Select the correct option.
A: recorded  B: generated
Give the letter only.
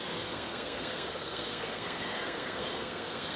B